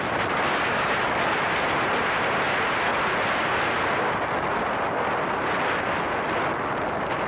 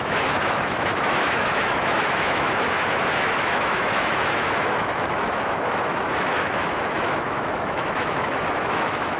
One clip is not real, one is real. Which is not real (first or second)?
second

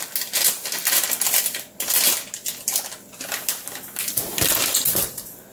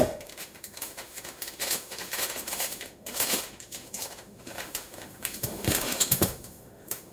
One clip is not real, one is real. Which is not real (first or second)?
second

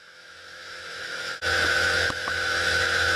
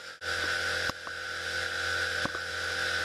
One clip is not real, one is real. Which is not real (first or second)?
first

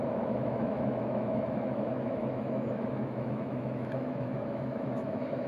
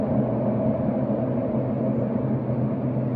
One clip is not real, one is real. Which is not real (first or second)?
first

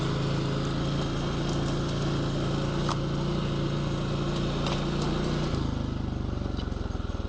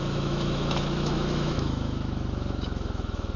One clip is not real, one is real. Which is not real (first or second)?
second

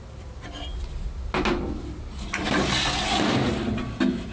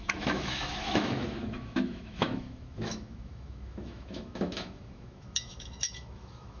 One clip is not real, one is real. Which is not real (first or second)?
second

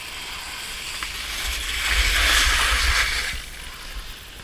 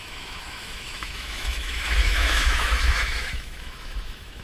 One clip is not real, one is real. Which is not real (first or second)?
second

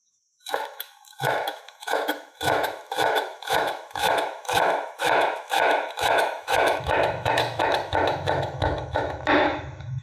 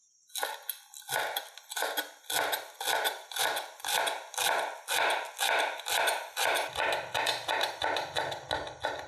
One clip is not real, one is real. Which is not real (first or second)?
first